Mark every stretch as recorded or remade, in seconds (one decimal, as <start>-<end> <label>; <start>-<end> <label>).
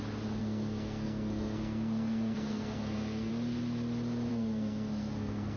0.0-0.4 recorded; 0.4-3.3 remade; 3.3-4.3 recorded; 4.3-5.6 remade